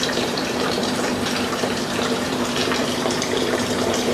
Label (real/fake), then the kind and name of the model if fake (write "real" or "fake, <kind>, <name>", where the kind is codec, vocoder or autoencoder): fake, vocoder, BigVGAN v2